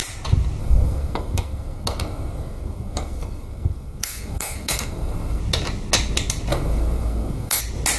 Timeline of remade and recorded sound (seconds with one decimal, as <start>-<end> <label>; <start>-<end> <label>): 0.0-0.6 recorded; 0.6-5.4 remade; 5.4-6.5 recorded; 6.5-7.6 remade; 7.6-8.0 recorded